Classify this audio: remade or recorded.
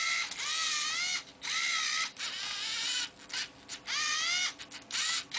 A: recorded